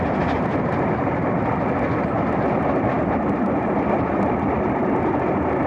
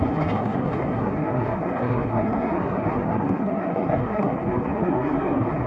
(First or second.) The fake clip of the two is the second